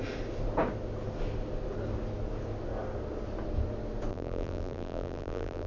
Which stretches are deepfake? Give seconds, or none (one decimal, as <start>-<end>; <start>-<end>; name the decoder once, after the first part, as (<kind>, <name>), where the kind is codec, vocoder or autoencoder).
4.1-5.7 (vocoder, BigVGAN v2)